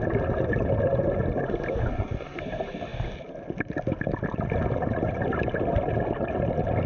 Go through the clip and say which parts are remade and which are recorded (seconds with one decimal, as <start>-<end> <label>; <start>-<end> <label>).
0.0-1.9 recorded; 1.9-2.4 remade; 2.4-6.9 recorded